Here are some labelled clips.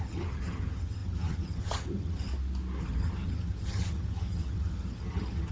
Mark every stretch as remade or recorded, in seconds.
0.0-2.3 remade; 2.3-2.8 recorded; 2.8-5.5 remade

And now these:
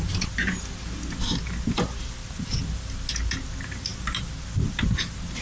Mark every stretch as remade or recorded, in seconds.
0.0-5.4 recorded

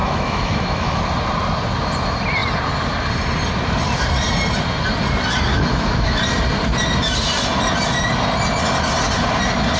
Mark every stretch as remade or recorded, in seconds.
0.0-1.0 remade; 1.0-5.5 recorded; 5.5-6.2 remade; 6.2-9.8 recorded

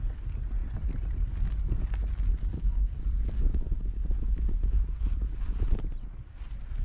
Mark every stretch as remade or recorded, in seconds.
0.0-3.5 recorded; 3.5-4.4 remade; 4.4-6.8 recorded

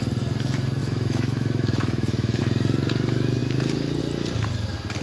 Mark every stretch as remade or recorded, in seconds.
0.0-0.8 recorded; 0.8-2.4 remade; 2.4-5.0 recorded

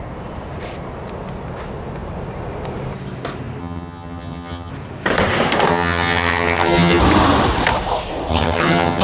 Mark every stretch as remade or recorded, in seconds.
0.0-3.6 recorded; 3.6-4.7 remade; 4.7-5.7 recorded; 5.7-7.0 remade; 7.0-8.3 recorded; 8.3-9.0 remade